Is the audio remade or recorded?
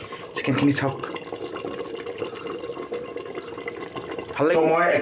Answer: recorded